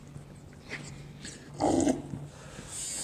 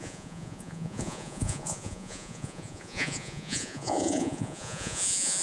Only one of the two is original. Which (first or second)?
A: first